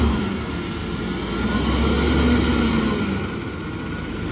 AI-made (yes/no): no